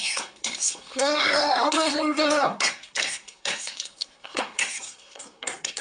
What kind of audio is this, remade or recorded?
remade